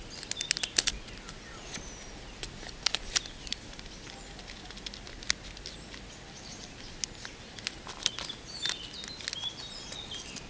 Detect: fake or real real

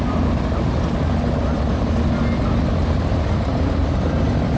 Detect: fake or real real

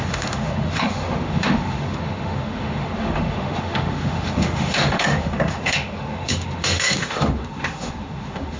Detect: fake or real fake